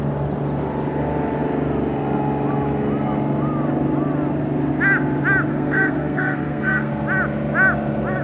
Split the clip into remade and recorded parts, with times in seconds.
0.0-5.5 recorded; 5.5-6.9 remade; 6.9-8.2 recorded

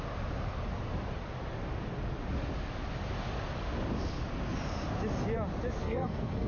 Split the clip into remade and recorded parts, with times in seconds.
0.0-5.8 recorded; 5.8-6.5 remade

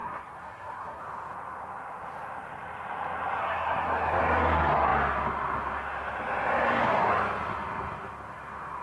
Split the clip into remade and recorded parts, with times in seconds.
0.0-1.0 remade; 1.0-3.4 recorded; 3.4-4.2 remade; 4.2-8.8 recorded